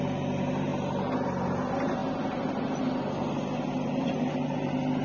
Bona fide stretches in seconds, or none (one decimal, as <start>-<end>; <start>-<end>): 0.0-5.0